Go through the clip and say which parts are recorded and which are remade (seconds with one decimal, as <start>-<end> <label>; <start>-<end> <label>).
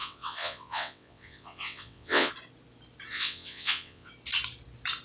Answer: 0.0-2.3 remade; 2.3-3.1 recorded; 3.1-4.1 remade; 4.1-5.0 recorded